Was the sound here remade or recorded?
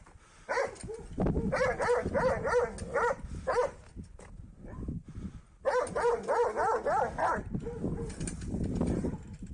recorded